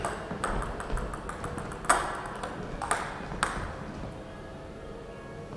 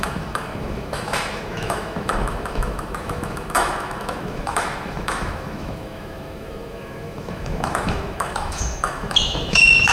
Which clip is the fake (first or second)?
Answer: second